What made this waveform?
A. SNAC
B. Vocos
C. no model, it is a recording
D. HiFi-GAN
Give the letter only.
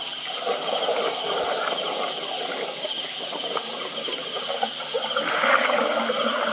C